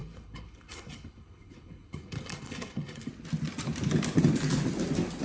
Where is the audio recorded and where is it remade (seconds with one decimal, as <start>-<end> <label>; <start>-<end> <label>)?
0.0-3.1 remade; 3.1-5.2 recorded